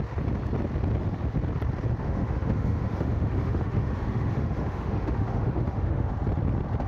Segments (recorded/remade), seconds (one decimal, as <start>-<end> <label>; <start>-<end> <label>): 0.0-2.0 recorded; 2.0-6.1 remade; 6.1-6.9 recorded